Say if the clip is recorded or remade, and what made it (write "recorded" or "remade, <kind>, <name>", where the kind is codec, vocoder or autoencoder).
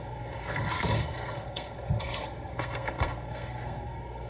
remade, codec, SNAC